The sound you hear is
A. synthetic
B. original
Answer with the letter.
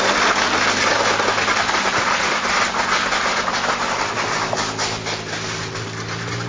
B